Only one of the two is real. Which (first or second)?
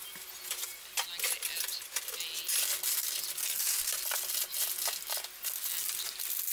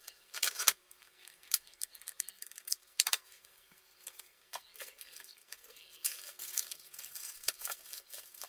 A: first